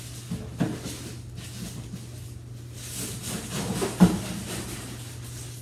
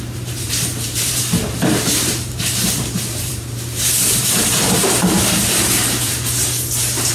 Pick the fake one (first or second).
second